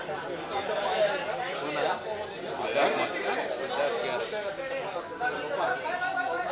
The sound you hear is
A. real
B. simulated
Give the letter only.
A